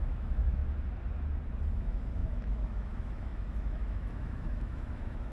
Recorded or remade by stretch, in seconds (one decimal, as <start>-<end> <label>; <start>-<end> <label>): 0.0-0.6 remade; 0.6-1.7 recorded; 1.7-5.3 remade